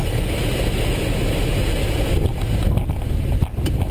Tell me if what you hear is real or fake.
real